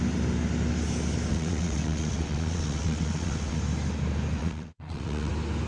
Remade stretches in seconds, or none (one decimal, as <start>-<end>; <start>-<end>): 1.3-3.6; 4.4-5.3